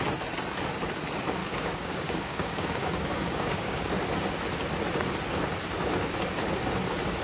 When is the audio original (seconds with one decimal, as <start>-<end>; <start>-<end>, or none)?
0.0-1.4; 3.9-7.2